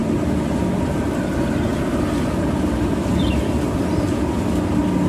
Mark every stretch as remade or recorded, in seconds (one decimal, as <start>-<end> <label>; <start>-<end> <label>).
0.0-5.1 recorded